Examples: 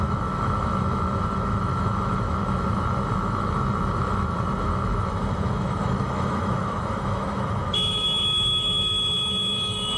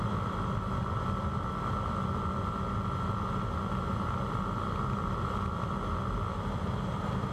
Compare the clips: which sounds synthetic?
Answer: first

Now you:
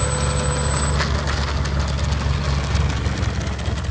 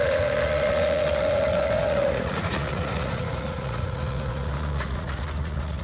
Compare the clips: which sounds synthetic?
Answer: second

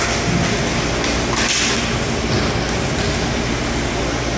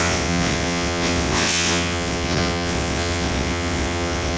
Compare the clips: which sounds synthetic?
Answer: second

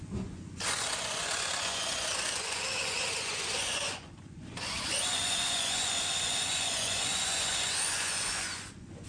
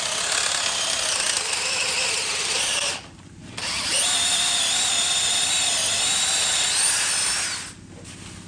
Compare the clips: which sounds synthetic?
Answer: first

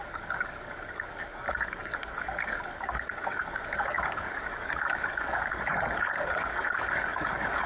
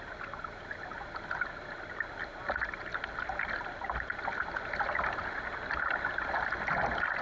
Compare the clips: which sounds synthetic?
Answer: first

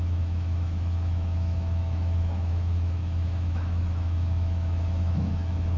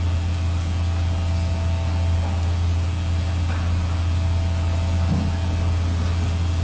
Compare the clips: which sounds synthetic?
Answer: first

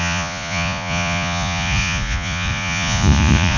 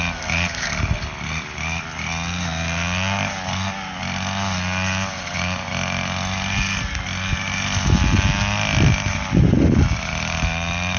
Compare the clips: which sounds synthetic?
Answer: first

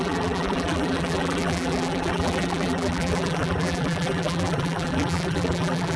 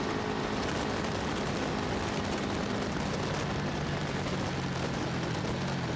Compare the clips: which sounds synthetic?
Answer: first